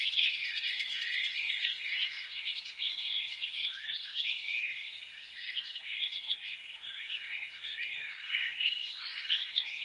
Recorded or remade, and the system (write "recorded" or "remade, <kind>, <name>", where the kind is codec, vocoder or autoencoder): remade, codec, SNAC